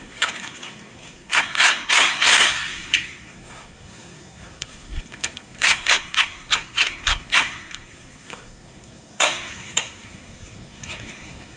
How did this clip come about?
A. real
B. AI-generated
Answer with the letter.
B